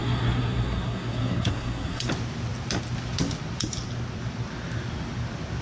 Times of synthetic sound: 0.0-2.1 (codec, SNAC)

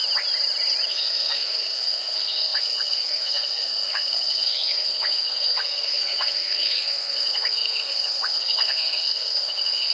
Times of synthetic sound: 0.9-9.9 (codec, SNAC)

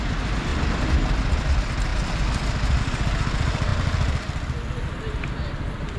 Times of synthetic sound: none

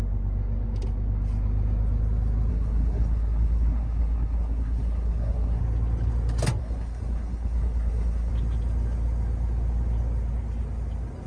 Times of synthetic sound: 2.5-5.6 (codec, SNAC); 6.6-8.3

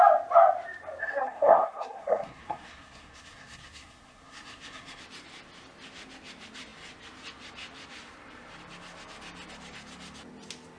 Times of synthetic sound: 1.0-5.0 (codec, SNAC)

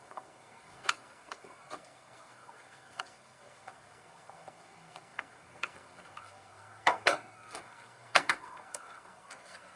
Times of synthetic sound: 0.0-9.8 (codec, SNAC)